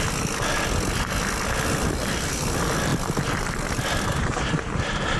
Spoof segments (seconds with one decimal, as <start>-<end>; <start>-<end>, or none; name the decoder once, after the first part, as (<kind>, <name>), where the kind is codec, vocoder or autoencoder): 2.9-3.7 (vocoder, BigVGAN v2)

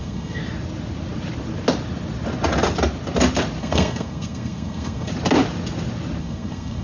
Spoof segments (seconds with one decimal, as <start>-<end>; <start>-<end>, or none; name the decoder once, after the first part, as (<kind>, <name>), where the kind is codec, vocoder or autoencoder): 0.0-0.4 (codec, SNAC); 3.6-5.1; 6.2-6.8

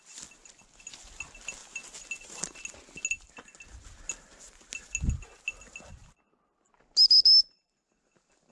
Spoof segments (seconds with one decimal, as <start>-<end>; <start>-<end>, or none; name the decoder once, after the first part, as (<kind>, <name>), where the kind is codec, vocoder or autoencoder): none

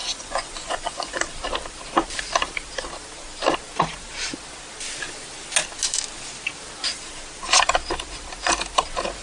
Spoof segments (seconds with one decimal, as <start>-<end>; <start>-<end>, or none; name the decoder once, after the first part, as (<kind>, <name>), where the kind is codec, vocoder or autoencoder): 0.0-1.2 (vocoder, Vocos)